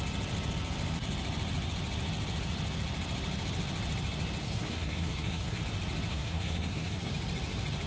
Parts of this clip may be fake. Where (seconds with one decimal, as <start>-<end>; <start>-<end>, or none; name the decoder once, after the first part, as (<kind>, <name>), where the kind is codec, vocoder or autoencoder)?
4.4-5.6 (codec, SNAC); 6.1-7.1